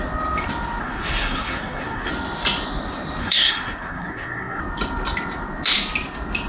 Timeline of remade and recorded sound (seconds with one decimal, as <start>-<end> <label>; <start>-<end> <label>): 0.0-0.8 recorded; 0.8-2.1 remade; 2.1-3.2 recorded; 3.2-4.6 remade; 4.6-6.5 recorded